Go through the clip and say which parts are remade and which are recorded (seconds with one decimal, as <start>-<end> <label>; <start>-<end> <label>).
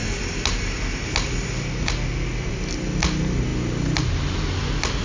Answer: 0.0-5.0 recorded